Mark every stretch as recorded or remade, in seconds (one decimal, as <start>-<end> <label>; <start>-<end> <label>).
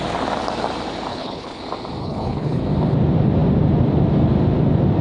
0.0-1.1 recorded; 1.1-1.6 remade; 1.6-2.0 recorded; 2.0-2.6 remade; 2.6-5.0 recorded